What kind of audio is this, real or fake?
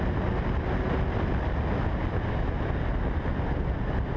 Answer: real